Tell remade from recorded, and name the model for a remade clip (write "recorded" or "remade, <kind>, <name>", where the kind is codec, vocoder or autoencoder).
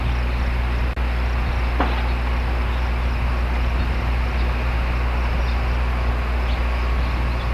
recorded